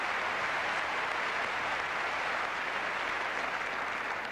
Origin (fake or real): real